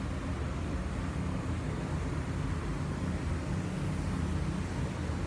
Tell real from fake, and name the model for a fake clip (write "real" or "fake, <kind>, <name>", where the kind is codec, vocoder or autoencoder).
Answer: real